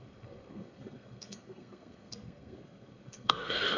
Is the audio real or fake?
fake